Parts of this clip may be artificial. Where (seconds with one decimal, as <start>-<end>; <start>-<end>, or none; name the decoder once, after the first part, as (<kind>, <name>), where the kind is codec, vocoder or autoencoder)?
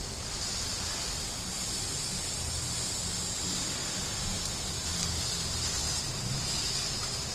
0.7-1.7 (vocoder, BigVGAN v2); 3.8-4.7